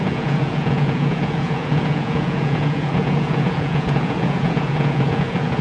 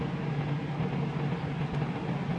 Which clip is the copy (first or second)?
first